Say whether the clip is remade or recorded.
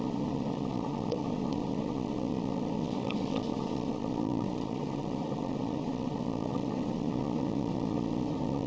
remade